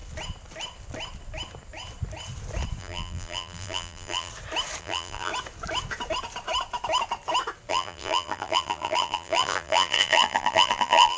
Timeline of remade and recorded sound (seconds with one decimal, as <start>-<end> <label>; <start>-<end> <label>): 0.0-2.8 recorded; 2.8-4.3 remade; 4.3-4.8 recorded; 4.8-5.3 remade; 5.3-7.7 recorded; 7.7-11.2 remade